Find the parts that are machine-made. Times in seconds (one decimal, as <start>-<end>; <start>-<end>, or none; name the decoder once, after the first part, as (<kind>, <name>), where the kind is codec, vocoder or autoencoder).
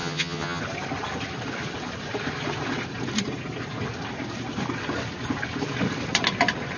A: 0.0-0.6 (vocoder, HiFi-GAN)